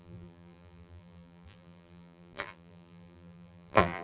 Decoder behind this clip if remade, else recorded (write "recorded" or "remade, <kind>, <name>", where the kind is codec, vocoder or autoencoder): remade, vocoder, BigVGAN v2